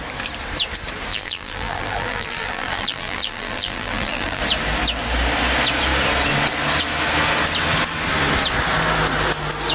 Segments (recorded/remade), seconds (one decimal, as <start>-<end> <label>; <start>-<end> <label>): 0.0-1.1 recorded; 1.1-4.4 remade; 4.4-9.7 recorded